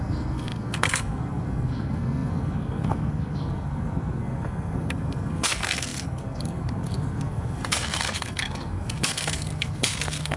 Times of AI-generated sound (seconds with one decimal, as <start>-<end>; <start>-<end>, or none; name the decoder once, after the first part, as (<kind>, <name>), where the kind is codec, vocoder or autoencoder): 0.0-10.4 (codec, SNAC)